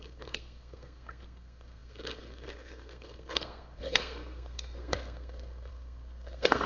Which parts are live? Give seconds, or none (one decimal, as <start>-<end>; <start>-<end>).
none